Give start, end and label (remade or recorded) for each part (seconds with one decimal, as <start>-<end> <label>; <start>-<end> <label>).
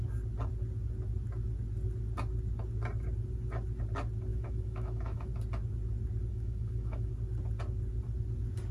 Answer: 0.0-4.3 recorded; 4.3-5.3 remade; 5.3-6.3 recorded; 6.3-7.1 remade; 7.1-8.7 recorded